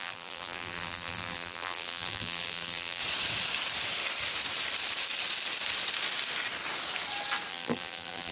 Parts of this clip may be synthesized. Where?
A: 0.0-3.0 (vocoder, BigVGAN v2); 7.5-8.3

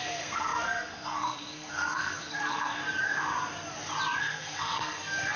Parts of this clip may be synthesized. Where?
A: 0.0-2.8 (codec, SNAC); 4.2-5.4

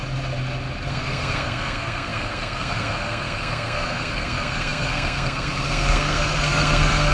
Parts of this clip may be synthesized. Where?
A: 0.9-7.1 (codec, SNAC)

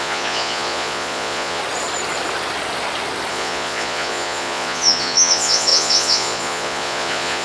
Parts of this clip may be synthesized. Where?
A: 0.0-1.6 (vocoder, Vocos); 3.3-7.4

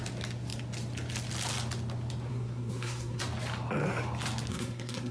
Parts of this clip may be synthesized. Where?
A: 2.3-3.2 (codec, SNAC); 4.5-5.1